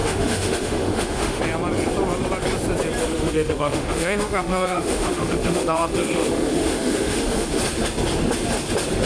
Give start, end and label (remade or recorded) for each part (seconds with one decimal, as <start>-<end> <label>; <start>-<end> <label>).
0.0-1.4 remade; 1.4-3.0 recorded; 3.0-7.6 remade; 7.6-9.1 recorded